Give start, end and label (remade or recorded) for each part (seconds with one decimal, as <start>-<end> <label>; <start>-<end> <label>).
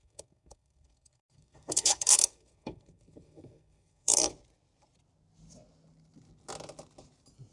0.0-4.3 remade; 4.3-7.5 recorded